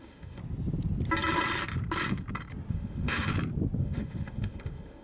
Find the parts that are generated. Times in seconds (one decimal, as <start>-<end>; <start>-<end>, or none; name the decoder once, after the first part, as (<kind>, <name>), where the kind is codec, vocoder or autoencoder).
0.0-0.4 (autoencoder, DAC-VAE); 2.7-3.3; 3.8-5.0

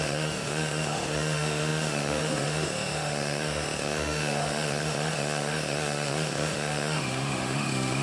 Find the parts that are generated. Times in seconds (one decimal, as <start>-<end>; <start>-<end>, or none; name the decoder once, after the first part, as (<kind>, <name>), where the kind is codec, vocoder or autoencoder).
0.0-8.0 (autoencoder, DAC-VAE)

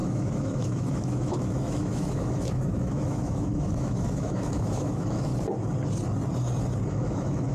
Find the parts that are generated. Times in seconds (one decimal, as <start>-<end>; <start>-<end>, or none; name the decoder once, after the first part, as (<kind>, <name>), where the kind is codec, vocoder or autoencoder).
0.0-5.3 (autoencoder, DAC-VAE); 6.9-7.5

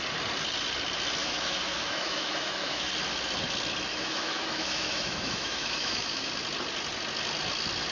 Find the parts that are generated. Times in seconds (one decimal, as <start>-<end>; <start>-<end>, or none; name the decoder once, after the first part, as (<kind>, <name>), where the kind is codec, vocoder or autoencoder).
1.2-2.9 (autoencoder, DAC-VAE); 3.9-6.3